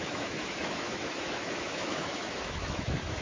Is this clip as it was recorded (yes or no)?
no